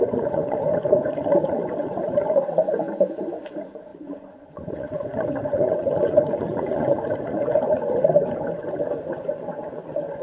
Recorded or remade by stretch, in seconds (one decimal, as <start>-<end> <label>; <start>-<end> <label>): 0.0-7.8 remade; 7.8-9.1 recorded; 9.1-10.2 remade